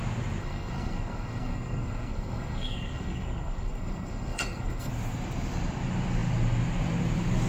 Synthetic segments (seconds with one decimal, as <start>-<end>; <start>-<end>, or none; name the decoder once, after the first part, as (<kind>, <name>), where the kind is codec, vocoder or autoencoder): 0.4-4.9 (codec, SNAC)